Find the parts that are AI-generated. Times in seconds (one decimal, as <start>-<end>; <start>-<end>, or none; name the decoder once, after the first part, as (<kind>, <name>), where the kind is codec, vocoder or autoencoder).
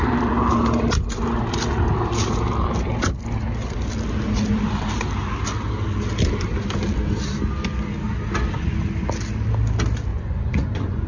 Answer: 10.1-11.1 (vocoder, Vocos)